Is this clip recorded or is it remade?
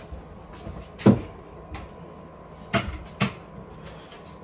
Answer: recorded